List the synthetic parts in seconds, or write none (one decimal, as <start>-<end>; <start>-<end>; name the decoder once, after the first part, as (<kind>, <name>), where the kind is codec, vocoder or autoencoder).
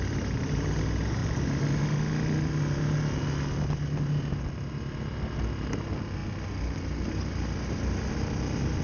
none